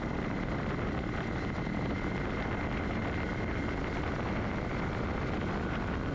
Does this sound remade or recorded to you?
recorded